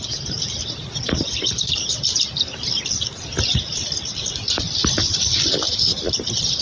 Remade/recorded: recorded